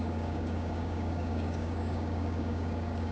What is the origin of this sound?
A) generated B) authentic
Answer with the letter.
A